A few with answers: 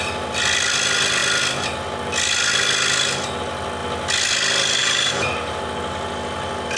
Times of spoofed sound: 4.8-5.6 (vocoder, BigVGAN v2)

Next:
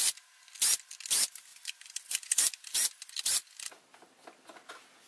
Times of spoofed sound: 1.5-2.7 (vocoder, BigVGAN v2)